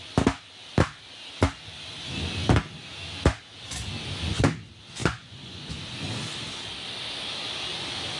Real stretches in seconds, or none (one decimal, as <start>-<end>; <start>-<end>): 0.0-5.0; 5.8-8.2